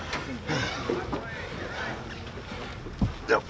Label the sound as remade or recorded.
recorded